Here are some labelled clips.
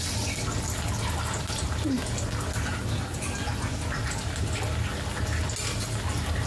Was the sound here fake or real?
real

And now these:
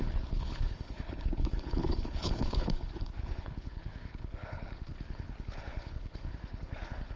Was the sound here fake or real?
fake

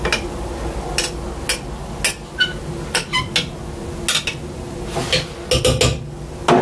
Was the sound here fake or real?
real